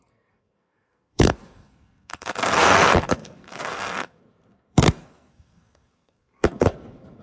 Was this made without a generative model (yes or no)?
no